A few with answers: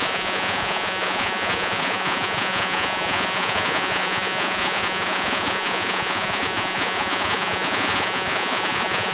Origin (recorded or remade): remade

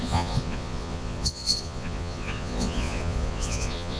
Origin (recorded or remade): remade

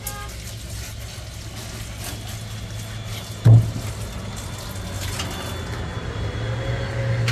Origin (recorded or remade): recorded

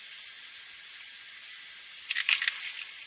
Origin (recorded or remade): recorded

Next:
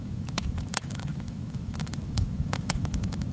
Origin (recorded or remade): remade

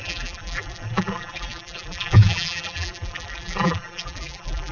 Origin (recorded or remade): remade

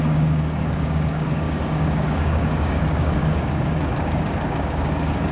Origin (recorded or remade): remade